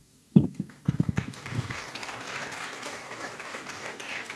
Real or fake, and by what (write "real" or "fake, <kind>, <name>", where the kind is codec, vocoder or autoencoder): fake, codec, DAC